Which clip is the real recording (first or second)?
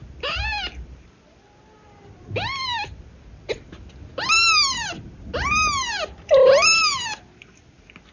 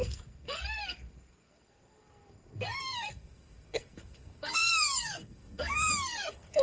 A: first